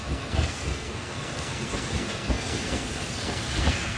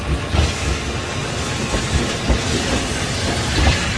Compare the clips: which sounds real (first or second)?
second